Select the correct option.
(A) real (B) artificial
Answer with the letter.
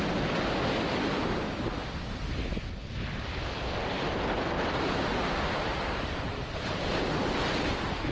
A